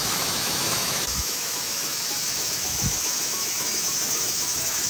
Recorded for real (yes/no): no